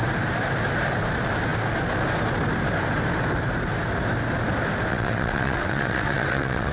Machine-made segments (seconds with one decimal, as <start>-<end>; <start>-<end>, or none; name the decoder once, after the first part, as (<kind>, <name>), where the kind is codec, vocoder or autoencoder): 4.9-6.7 (vocoder, WaveNeXt)